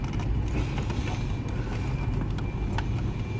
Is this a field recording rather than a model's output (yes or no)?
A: yes